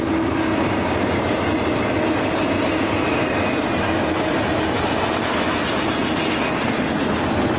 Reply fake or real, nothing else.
real